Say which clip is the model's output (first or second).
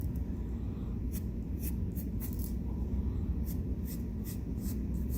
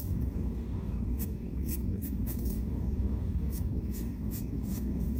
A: second